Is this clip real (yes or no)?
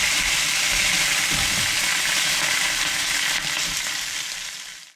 no